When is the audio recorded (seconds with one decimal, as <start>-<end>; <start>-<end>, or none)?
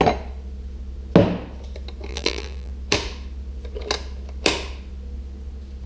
0.0-2.1; 2.7-5.9